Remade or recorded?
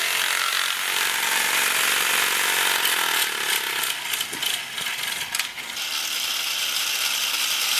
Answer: recorded